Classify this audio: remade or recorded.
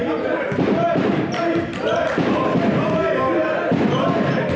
recorded